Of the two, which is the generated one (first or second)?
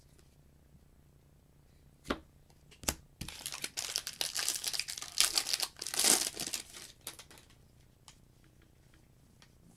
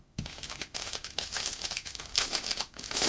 second